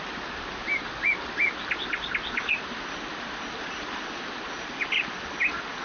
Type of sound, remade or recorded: recorded